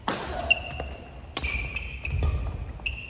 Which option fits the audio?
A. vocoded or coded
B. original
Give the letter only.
B